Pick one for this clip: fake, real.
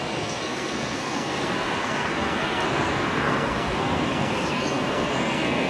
fake